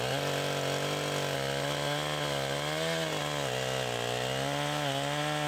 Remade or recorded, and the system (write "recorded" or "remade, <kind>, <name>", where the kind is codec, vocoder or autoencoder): recorded